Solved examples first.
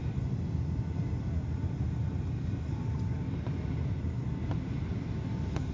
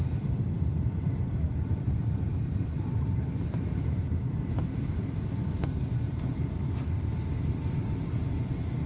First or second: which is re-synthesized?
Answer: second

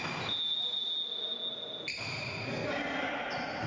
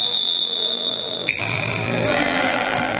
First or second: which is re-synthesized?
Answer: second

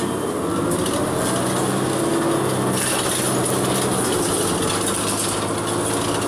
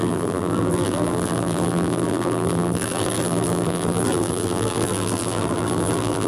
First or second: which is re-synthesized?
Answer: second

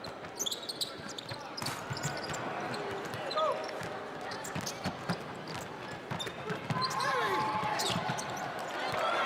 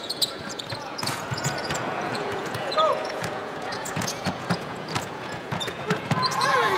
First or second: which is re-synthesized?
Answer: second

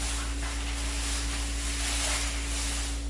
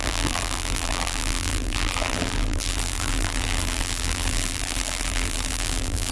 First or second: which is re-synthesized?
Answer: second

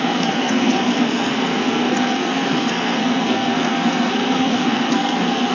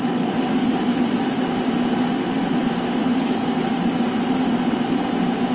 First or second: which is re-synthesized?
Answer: first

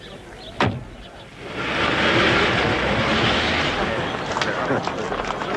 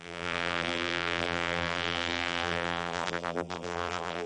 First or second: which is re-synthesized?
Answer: second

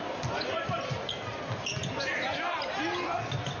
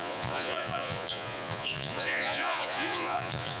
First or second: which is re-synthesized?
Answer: second